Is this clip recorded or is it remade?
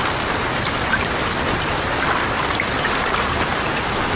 recorded